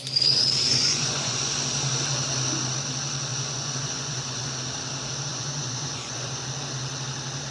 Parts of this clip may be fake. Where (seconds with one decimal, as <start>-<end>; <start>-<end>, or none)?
0.7-1.5; 3.3-4.5; 5.3-6.4